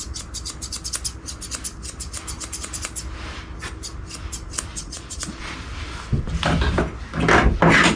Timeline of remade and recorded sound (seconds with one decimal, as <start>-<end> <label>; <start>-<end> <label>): 0.0-4.7 recorded; 4.7-5.5 remade; 5.5-8.0 recorded